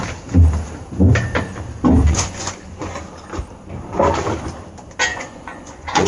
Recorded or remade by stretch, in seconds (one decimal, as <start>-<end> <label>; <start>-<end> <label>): 0.0-2.0 recorded; 2.0-3.0 remade; 3.0-5.1 recorded; 5.1-6.1 remade